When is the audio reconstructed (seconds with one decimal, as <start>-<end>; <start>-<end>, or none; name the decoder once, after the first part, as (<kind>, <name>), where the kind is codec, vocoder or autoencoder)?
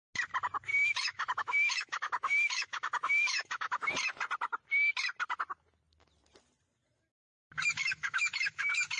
0.7-3.9 (autoencoder, DAC-VAE); 7.8-9.0